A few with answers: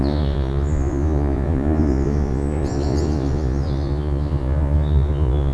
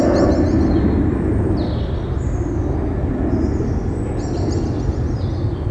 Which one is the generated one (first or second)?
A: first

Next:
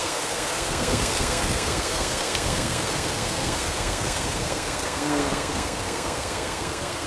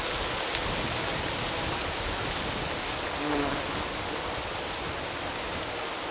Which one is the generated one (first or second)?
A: first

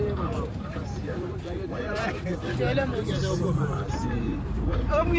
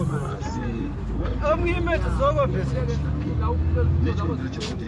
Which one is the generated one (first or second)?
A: first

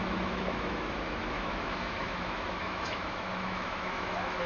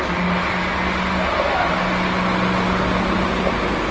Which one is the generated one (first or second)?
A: first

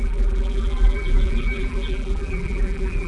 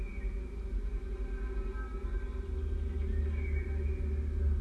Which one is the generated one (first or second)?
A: first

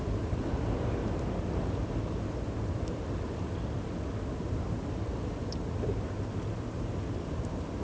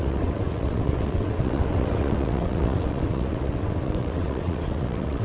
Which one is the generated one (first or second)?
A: second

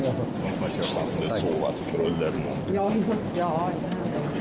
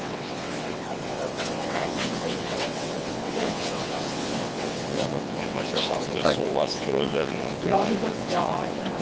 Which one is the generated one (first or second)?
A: second